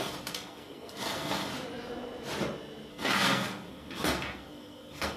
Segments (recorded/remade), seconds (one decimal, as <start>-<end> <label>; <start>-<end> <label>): 0.0-1.5 remade; 1.5-2.9 recorded; 2.9-5.2 remade